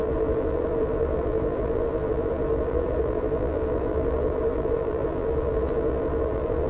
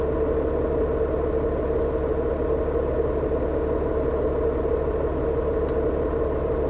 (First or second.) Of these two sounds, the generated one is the first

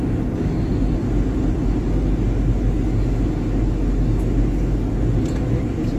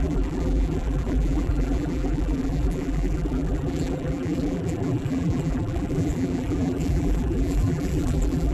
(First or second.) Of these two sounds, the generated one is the second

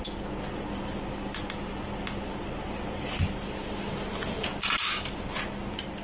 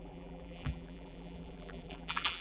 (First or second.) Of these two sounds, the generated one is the second